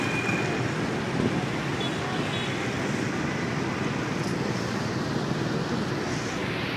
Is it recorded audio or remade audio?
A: recorded